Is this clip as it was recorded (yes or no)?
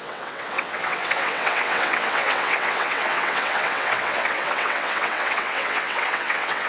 no